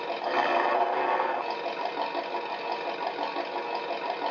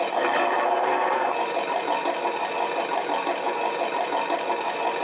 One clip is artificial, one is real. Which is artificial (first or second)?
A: second